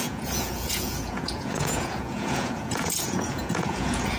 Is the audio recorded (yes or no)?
no